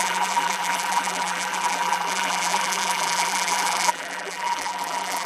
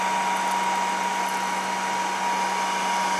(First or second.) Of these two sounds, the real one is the second